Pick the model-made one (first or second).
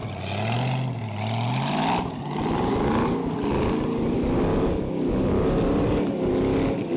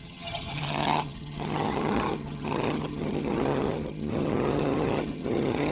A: second